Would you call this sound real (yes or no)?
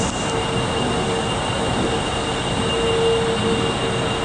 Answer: yes